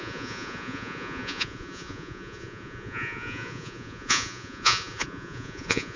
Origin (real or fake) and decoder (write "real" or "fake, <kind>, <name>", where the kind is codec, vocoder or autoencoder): fake, vocoder, Vocos